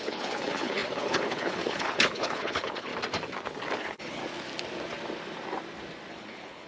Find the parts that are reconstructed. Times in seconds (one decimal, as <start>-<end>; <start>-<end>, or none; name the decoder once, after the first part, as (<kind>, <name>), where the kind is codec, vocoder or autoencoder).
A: 0.0-2.9 (codec, HILCodec); 3.8-4.2; 6.1-6.7